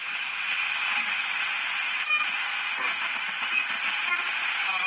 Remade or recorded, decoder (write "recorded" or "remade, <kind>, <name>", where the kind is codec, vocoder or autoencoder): recorded